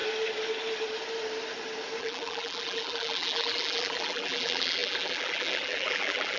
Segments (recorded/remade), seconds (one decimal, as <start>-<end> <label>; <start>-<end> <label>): 0.0-2.0 recorded; 2.0-6.4 remade